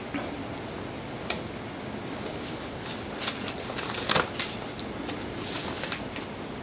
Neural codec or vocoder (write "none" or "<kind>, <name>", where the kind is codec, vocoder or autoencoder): none